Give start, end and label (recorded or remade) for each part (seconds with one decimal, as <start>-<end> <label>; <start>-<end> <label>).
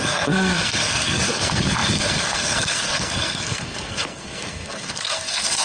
0.0-5.6 remade